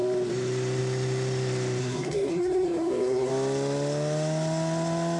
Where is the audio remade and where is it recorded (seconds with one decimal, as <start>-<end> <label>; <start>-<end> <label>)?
0.0-1.8 recorded; 1.8-3.3 remade; 3.3-5.2 recorded